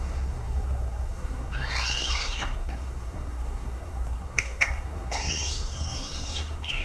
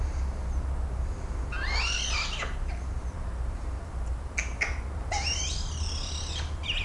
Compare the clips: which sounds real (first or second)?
second